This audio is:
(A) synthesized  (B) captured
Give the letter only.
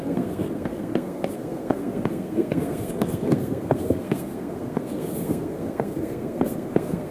A